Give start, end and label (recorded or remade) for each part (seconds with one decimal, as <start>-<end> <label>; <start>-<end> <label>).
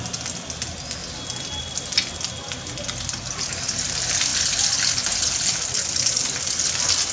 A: 0.0-7.1 recorded